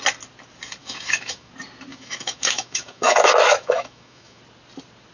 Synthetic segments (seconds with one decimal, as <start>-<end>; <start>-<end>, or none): 0.8-1.5; 1.9-4.4